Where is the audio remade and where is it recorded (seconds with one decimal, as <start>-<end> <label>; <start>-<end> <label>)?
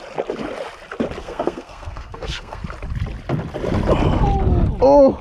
0.0-1.2 recorded; 1.2-2.6 remade; 2.6-5.2 recorded